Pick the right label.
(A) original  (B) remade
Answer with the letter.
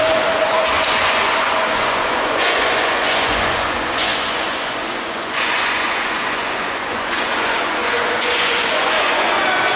B